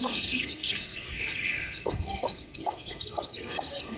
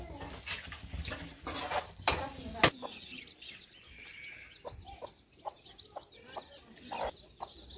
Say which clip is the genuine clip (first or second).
second